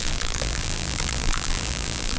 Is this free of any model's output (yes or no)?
no